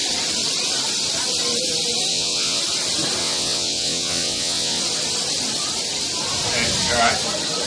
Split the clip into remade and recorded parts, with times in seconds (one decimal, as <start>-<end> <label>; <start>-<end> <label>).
0.0-2.1 recorded; 2.1-2.6 remade; 2.6-3.2 recorded; 3.2-4.8 remade; 4.8-7.7 recorded